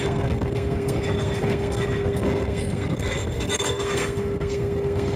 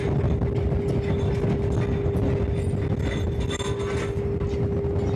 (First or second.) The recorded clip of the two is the second